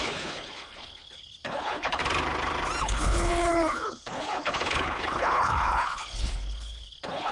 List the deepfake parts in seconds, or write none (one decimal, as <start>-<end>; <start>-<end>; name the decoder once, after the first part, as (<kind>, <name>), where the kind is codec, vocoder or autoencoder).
0.0-2.0 (codec, HILCodec); 2.8-7.3